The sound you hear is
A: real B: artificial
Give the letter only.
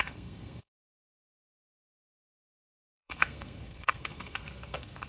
B